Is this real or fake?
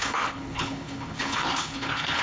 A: fake